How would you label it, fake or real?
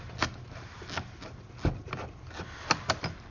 real